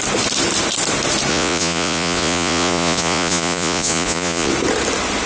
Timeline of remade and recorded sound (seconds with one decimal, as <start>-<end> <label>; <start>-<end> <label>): 0.0-1.3 recorded; 1.3-4.5 remade; 4.5-5.3 recorded